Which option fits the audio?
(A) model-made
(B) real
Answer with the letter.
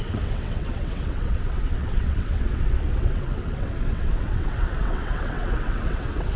A